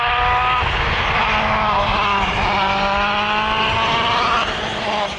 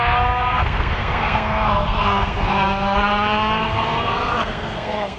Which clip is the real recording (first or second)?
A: first